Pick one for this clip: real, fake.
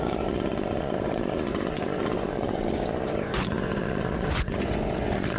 fake